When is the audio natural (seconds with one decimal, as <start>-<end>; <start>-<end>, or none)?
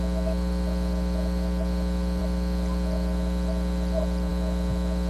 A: 0.0-5.1